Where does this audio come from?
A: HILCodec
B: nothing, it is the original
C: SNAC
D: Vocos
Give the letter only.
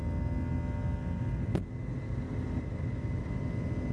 B